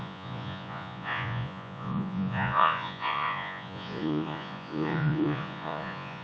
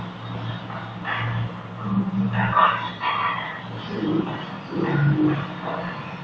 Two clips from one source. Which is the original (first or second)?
second